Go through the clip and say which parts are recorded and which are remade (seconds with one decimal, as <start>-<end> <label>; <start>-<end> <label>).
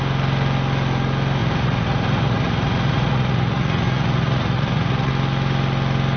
0.0-1.4 recorded; 1.4-5.1 remade; 5.1-6.2 recorded